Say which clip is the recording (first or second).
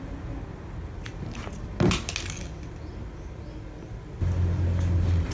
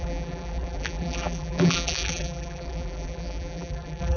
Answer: first